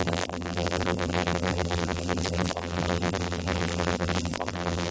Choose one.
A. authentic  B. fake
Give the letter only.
B